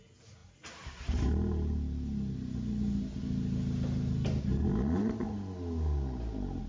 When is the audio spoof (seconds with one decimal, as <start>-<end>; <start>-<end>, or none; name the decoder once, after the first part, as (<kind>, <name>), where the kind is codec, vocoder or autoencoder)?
none